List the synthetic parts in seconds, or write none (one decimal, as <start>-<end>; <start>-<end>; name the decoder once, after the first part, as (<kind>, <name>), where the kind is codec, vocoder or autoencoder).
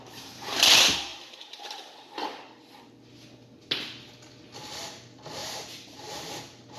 1.1-1.6 (vocoder, BigVGAN v2); 5.4-6.3